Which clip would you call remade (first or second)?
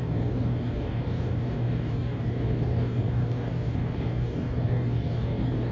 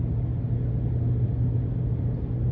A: first